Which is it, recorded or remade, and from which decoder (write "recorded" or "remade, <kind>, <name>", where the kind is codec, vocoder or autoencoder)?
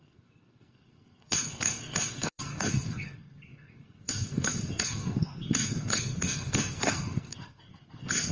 remade, codec, SNAC